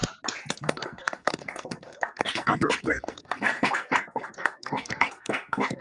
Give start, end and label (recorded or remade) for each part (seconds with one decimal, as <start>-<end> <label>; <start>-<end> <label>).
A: 0.0-0.5 recorded; 0.5-5.8 remade